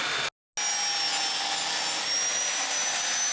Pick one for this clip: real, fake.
real